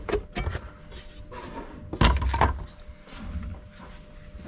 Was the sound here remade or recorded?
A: recorded